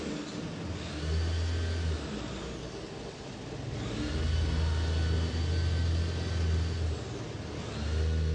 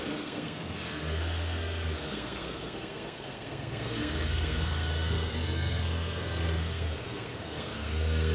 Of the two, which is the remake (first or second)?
second